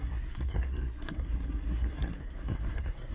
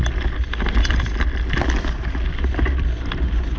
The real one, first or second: second